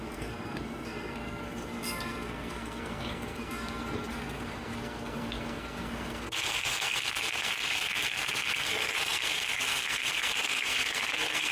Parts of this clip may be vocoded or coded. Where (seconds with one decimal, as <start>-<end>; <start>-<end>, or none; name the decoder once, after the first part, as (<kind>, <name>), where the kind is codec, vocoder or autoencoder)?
0.0-11.5 (codec, SNAC)